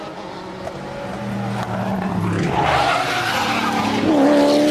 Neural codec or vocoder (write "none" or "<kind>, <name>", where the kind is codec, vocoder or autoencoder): none